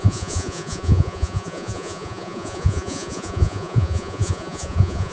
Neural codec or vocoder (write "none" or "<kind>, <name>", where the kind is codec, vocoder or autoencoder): vocoder, Vocos